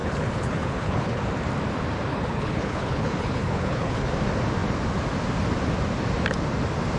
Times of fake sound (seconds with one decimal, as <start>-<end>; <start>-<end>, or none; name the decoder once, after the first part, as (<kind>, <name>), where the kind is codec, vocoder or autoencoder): 0.0-1.2 (codec, HILCodec); 2.1-4.1